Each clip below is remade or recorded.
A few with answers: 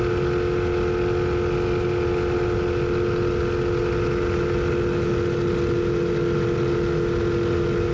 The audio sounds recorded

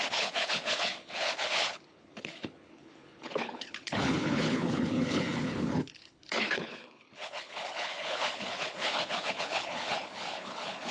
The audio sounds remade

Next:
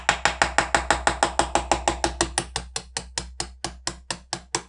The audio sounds recorded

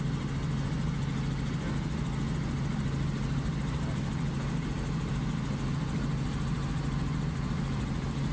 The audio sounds recorded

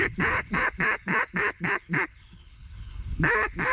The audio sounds remade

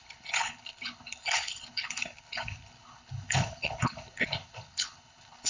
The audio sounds remade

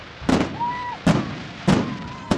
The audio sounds recorded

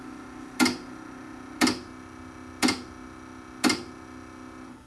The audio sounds recorded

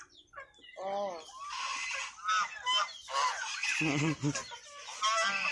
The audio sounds recorded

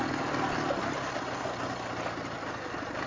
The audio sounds recorded